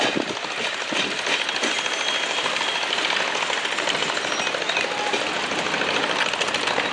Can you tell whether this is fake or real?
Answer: real